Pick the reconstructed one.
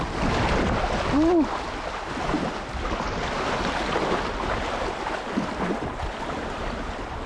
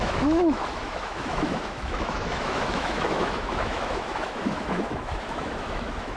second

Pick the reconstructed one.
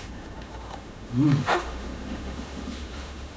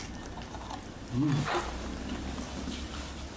first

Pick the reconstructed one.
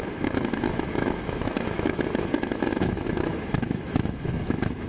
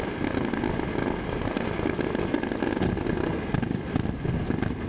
first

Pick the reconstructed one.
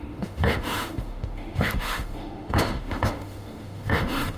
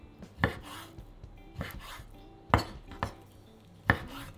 first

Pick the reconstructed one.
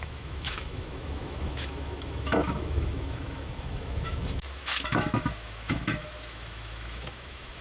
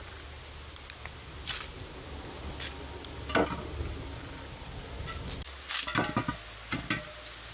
first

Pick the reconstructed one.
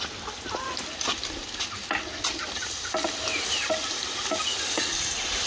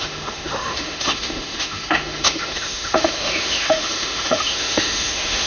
second